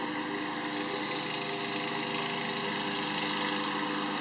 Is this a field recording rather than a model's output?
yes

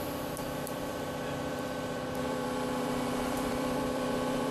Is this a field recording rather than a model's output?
no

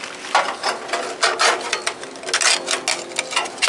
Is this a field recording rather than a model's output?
yes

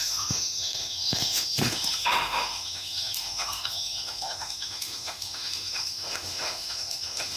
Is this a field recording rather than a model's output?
no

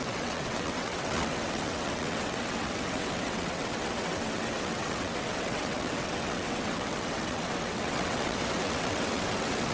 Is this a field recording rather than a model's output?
no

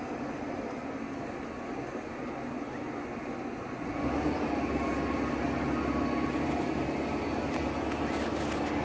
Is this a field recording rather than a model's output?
yes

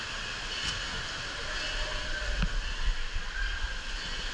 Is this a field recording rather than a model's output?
yes